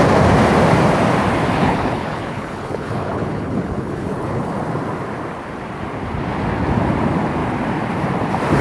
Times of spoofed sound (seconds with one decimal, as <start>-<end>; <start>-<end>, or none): 1.6-4.5